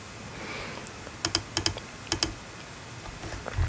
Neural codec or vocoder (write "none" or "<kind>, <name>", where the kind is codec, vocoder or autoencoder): none